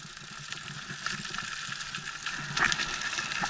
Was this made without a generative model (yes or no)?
yes